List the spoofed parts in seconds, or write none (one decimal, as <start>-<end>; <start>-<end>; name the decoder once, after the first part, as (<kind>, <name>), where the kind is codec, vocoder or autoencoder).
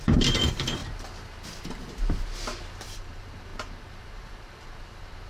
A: 0.0-0.8 (vocoder, BigVGAN v2); 2.8-5.3